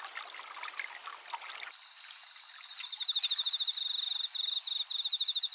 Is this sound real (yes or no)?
yes